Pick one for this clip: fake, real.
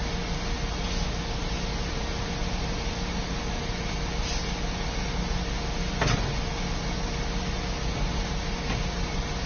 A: real